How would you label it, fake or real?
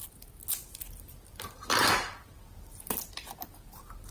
real